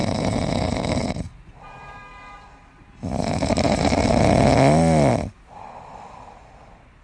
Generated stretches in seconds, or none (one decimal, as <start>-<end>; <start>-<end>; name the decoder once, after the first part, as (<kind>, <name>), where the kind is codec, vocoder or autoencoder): 0.0-4.2 (vocoder, BigVGAN v2)